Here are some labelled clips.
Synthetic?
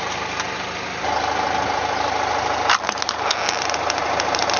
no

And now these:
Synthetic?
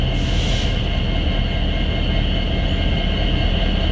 no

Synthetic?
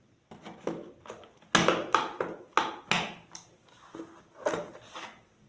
no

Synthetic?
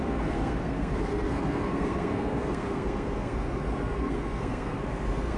yes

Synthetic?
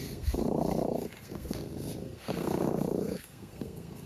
yes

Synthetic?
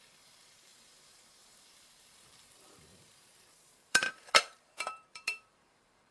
yes